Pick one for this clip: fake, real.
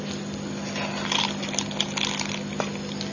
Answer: real